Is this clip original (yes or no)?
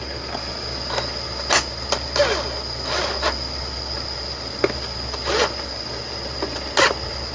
yes